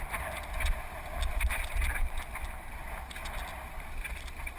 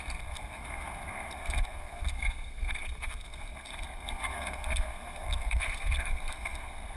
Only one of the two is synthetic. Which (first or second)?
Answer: second